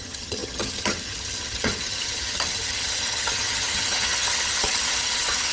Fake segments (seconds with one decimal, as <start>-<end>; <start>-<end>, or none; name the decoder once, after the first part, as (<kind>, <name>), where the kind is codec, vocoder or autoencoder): 0.0-5.5 (vocoder, HiFi-GAN)